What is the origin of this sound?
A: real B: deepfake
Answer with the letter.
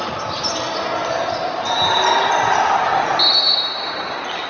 A